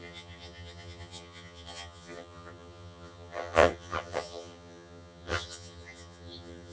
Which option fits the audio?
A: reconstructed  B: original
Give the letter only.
A